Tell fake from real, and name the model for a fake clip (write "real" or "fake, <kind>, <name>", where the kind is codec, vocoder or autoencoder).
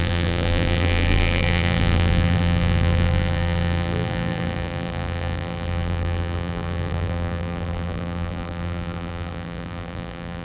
fake, vocoder, BigVGAN v2